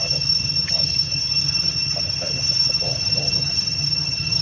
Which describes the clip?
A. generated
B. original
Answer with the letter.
A